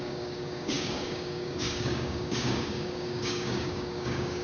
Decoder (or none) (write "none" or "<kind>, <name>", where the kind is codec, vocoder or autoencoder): codec, DAC